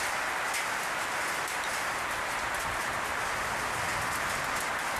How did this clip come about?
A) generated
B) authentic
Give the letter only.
B